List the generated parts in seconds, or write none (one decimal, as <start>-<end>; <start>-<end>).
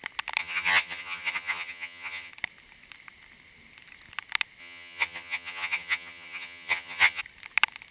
0.4-2.3; 4.6-7.2